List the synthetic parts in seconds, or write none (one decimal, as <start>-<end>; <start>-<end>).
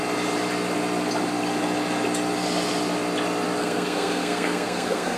3.6-5.2